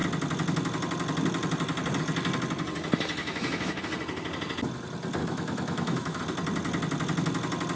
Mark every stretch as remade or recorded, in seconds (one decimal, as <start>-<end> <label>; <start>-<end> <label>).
0.0-3.2 recorded; 3.2-3.8 remade; 3.8-5.2 recorded; 5.2-6.2 remade; 6.2-7.8 recorded